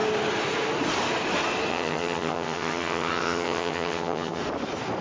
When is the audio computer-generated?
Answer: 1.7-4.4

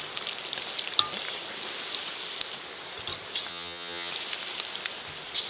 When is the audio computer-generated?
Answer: 3.5-4.1

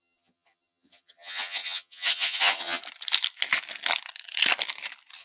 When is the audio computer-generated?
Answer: 0.0-2.8

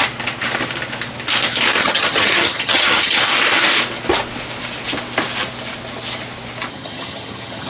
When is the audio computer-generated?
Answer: 1.8-3.2; 6.7-7.7

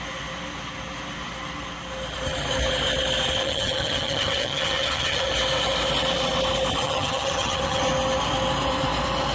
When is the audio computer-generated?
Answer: 3.4-5.3; 6.8-7.8

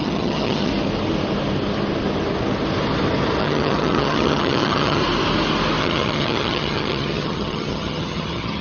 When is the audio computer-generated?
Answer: 0.0-0.7; 3.4-5.0; 5.8-8.6